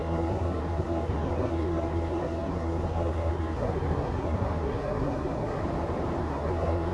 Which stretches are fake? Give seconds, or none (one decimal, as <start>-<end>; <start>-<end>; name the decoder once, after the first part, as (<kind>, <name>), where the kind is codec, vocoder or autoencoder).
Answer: 0.0-5.6 (codec, SNAC); 6.2-6.9